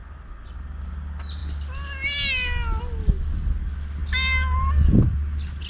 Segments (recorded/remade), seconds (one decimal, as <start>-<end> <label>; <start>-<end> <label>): 0.0-5.7 recorded